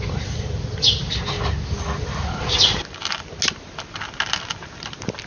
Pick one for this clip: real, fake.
real